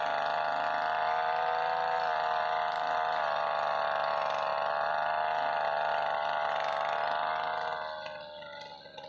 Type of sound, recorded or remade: recorded